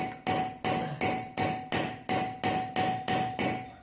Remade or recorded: recorded